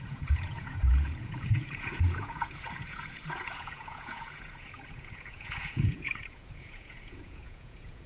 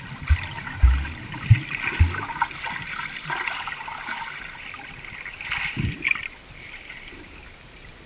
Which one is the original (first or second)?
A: second